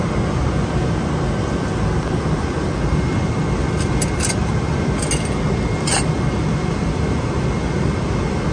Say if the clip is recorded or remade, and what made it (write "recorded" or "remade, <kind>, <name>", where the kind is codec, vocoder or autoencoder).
recorded